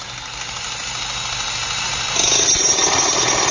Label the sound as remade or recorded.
recorded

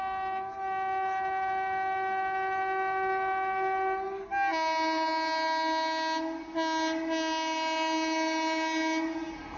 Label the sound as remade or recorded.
recorded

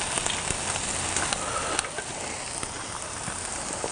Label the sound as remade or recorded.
recorded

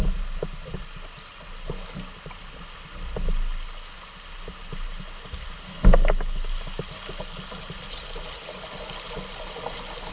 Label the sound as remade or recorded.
recorded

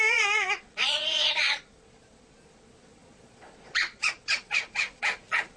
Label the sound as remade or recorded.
remade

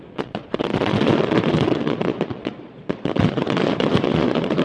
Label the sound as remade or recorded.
remade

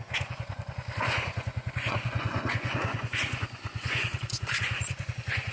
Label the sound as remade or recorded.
remade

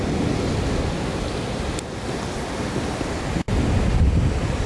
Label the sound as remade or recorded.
recorded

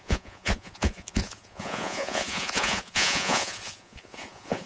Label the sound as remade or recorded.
remade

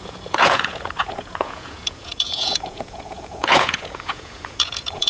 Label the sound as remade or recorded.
remade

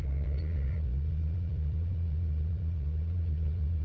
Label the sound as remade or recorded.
remade